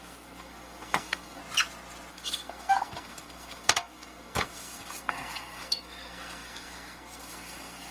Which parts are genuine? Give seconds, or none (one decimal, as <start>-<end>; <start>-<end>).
1.4-2.1